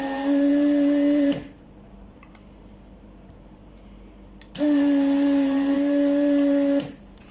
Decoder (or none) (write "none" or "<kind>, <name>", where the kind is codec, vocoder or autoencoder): vocoder, BigVGAN v2